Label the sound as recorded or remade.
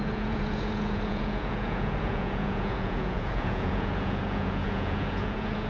remade